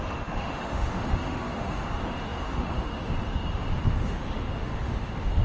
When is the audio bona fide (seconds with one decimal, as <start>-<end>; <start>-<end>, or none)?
none